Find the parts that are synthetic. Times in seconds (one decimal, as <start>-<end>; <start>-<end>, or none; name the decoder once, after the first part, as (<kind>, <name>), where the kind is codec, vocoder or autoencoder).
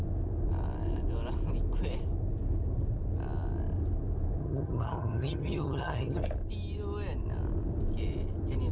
4.4-6.2 (vocoder, HiFi-GAN)